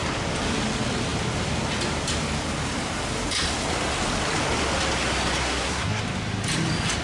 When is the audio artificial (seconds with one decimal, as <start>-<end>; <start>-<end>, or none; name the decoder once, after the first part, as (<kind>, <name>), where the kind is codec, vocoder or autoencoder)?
5.4-6.0 (codec, SNAC)

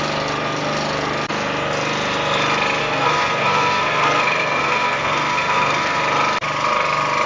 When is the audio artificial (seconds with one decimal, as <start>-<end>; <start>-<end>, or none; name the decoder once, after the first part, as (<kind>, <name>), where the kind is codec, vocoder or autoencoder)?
2.8-6.0 (codec, SNAC)

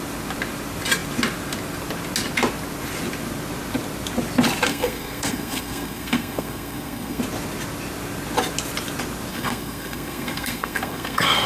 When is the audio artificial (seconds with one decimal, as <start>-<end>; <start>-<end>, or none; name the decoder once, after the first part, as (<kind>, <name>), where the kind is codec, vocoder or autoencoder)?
4.7-7.2 (codec, SNAC); 9.3-11.5

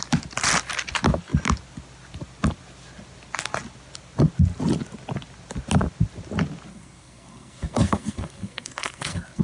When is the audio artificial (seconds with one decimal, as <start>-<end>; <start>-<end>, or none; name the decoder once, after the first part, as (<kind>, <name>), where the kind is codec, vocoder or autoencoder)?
6.7-9.4 (codec, SNAC)

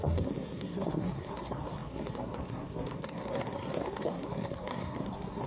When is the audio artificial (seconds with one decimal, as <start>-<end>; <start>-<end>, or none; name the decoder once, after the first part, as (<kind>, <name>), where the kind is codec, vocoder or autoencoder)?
0.0-5.5 (codec, SNAC)

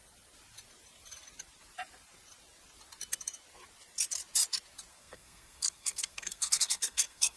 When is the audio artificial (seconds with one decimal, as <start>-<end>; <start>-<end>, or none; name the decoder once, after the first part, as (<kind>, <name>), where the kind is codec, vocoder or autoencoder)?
4.9-7.4 (codec, SNAC)